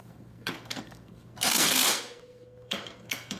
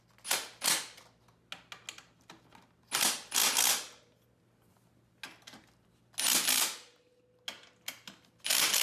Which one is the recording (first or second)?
second